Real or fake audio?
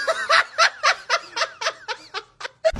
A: real